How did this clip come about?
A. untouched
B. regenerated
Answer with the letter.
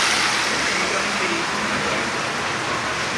A